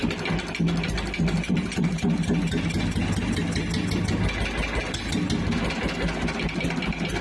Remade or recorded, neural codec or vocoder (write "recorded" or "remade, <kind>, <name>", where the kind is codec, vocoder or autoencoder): recorded